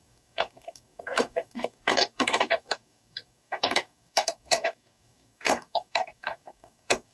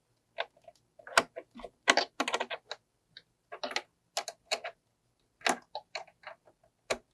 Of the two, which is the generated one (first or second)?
first